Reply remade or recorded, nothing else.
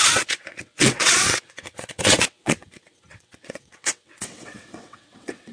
remade